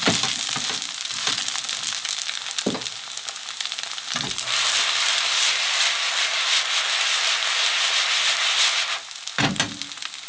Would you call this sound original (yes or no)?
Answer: yes